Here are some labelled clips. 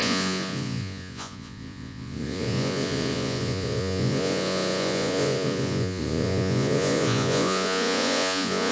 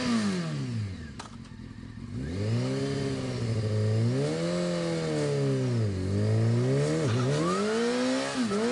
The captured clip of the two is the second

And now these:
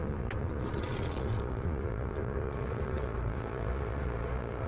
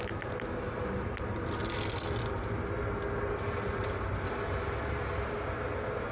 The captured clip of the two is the second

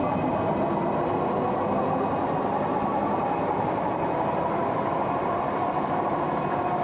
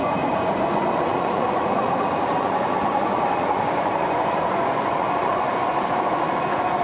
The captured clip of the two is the first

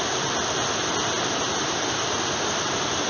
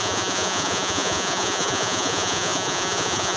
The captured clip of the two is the first